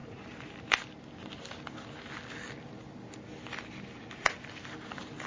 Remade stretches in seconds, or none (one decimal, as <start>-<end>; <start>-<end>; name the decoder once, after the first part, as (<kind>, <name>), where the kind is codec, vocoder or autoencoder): 0.0-0.5 (vocoder, BigVGAN v2)